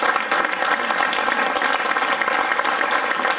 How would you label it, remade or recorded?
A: recorded